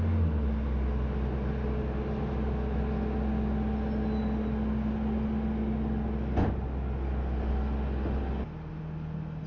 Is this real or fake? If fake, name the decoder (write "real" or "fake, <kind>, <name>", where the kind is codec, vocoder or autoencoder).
real